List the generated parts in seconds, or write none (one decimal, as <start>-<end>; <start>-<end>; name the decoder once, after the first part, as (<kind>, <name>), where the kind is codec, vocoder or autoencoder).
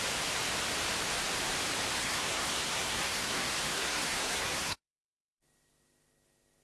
2.0-5.0 (codec, SNAC)